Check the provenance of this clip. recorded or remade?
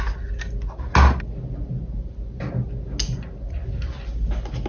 recorded